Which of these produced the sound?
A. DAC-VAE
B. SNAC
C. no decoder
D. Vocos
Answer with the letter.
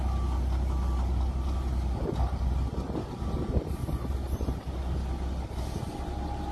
C